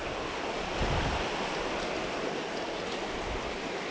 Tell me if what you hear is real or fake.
real